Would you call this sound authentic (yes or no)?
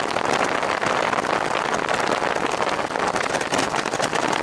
yes